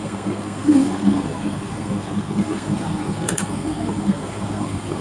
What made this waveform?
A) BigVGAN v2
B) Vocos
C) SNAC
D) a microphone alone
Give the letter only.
C